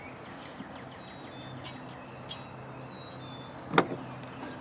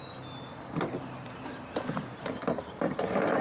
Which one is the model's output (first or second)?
second